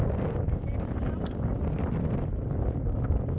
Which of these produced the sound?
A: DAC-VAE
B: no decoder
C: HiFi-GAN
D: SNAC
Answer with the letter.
B